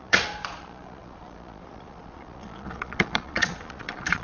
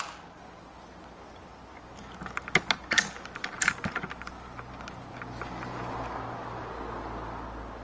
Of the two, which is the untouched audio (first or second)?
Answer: second